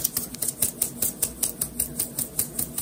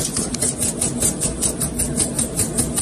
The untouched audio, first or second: first